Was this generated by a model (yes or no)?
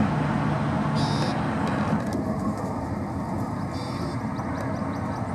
no